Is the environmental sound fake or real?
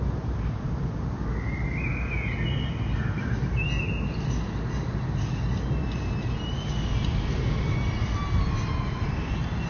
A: real